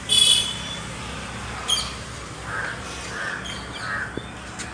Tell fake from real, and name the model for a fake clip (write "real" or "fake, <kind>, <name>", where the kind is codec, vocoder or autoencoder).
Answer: real